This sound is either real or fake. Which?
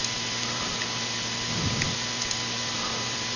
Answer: real